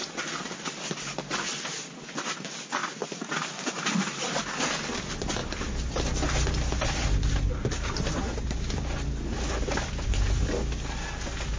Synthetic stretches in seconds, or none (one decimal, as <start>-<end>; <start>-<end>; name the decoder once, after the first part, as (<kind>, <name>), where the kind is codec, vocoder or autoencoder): none